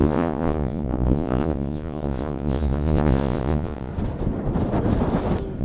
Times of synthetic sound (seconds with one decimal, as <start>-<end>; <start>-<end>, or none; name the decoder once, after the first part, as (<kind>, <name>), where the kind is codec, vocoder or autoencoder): 0.0-3.9 (vocoder, Vocos)